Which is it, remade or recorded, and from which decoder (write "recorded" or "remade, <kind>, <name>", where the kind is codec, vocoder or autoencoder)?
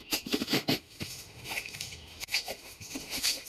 remade, autoencoder, DAC-VAE